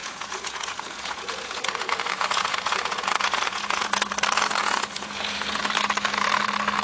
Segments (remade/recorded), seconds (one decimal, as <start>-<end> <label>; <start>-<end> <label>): 0.0-4.1 remade; 4.1-4.6 recorded; 4.6-5.6 remade; 5.6-6.8 recorded